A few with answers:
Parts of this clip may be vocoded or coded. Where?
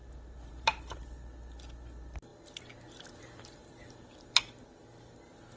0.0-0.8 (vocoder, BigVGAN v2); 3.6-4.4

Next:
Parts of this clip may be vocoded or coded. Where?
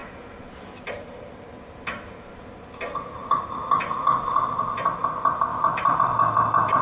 0.0-2.4 (vocoder, BigVGAN v2); 5.5-6.0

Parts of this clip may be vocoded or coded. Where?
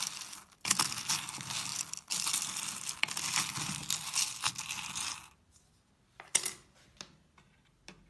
6.3-7.0 (vocoder, BigVGAN v2)